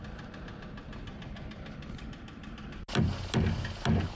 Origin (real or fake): real